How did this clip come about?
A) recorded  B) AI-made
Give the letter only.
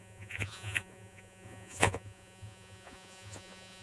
B